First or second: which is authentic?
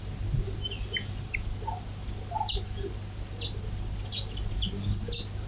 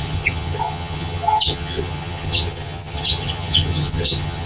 first